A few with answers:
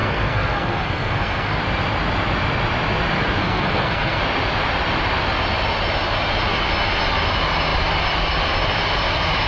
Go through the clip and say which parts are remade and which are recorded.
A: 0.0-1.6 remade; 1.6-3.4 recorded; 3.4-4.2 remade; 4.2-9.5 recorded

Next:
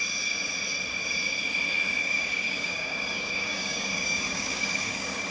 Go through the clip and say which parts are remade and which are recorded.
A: 0.0-2.0 recorded; 2.0-5.3 remade

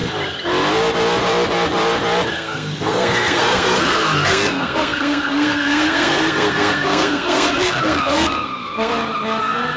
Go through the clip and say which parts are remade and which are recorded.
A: 0.0-2.3 recorded; 2.3-8.9 remade; 8.9-9.4 recorded; 9.4-9.8 remade

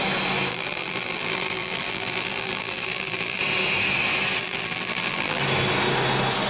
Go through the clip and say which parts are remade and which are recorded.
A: 0.0-0.5 recorded; 0.5-3.4 remade; 3.4-4.4 recorded; 4.4-5.4 remade; 5.4-6.5 recorded

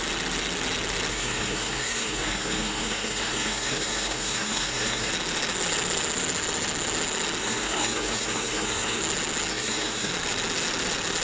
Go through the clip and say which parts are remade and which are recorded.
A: 0.0-1.1 recorded; 1.1-5.1 remade; 5.1-7.4 recorded; 7.4-9.0 remade; 9.0-9.5 recorded; 9.5-10.1 remade; 10.1-11.2 recorded

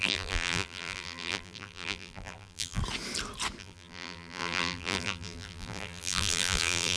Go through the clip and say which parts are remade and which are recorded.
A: 0.0-2.8 remade; 2.8-3.6 recorded; 3.6-7.0 remade

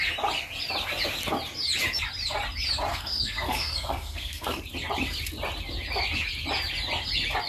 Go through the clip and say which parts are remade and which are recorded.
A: 0.0-2.9 recorded; 2.9-4.6 remade; 4.6-7.5 recorded